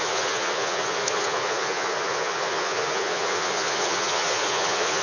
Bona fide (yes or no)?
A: no